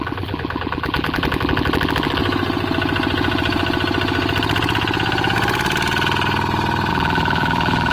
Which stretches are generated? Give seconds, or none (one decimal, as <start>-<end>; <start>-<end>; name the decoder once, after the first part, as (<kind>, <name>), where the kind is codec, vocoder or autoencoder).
0.0-2.2 (vocoder, BigVGAN v2); 6.9-7.9